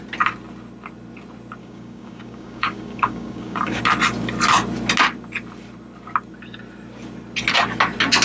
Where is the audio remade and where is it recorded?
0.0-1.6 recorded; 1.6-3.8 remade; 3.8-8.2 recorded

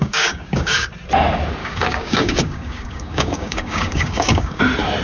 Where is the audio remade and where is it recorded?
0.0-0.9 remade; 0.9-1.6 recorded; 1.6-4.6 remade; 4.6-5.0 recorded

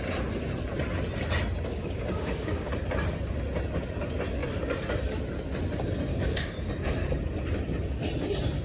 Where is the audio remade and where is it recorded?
0.0-1.7 recorded; 1.7-2.7 remade; 2.7-6.1 recorded; 6.1-6.7 remade; 6.7-8.6 recorded

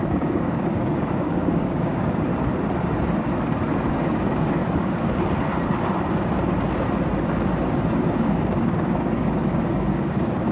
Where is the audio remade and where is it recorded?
0.0-2.3 remade; 2.3-3.9 recorded; 3.9-4.6 remade; 4.6-8.0 recorded; 8.0-10.5 remade